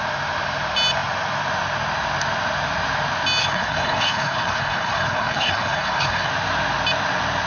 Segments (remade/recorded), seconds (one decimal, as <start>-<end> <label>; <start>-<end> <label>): 0.0-3.4 recorded; 3.4-6.3 remade; 6.3-7.5 recorded